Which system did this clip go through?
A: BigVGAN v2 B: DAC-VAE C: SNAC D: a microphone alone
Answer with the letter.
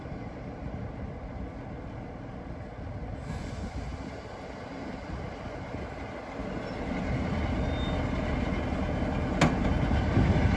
D